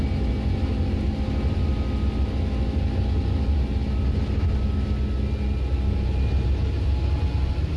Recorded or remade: recorded